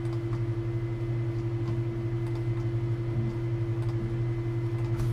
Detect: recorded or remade recorded